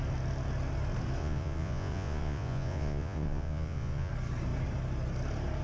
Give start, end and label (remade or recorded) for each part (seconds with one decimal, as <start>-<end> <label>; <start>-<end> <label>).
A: 0.0-1.2 recorded; 1.2-4.1 remade; 4.1-5.6 recorded